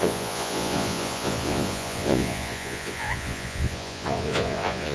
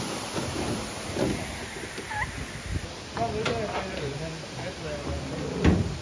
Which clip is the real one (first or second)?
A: second